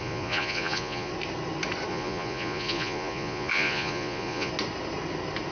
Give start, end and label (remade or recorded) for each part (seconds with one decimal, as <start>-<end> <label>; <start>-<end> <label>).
0.0-1.1 remade; 1.1-1.9 recorded; 1.9-4.5 remade; 4.5-5.5 recorded